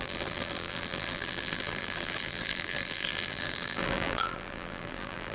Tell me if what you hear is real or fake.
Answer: fake